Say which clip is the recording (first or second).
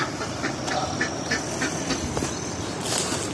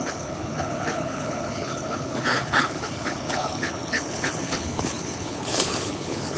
first